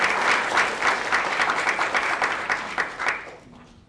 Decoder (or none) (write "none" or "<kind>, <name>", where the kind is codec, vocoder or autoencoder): none